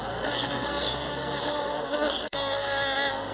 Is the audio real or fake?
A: fake